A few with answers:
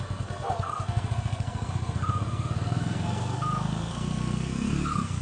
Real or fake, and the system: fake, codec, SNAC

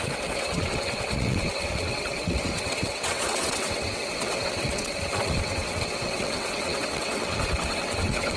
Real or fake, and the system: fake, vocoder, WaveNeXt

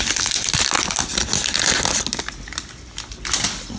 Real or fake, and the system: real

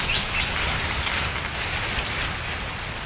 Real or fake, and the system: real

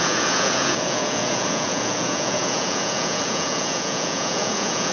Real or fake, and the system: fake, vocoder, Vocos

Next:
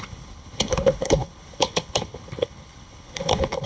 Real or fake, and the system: fake, codec, HILCodec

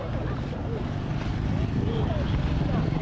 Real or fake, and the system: real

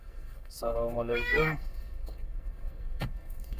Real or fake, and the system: fake, codec, SNAC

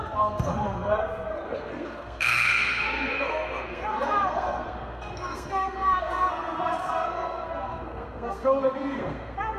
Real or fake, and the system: fake, codec, SNAC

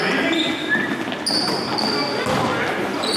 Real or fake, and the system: real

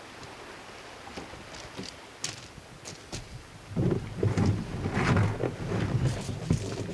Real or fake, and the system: real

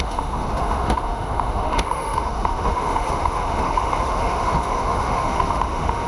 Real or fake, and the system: fake, autoencoder, DAC-VAE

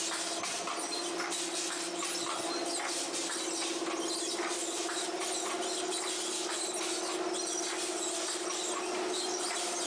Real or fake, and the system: real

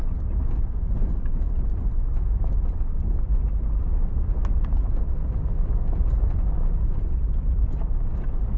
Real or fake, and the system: real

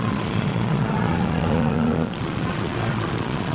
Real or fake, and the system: fake, vocoder, Vocos